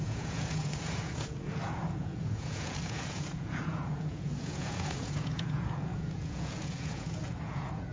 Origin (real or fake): fake